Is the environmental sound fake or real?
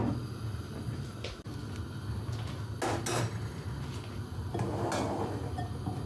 real